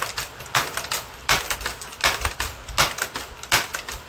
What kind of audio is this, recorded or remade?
recorded